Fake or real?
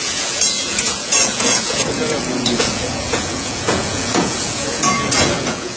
fake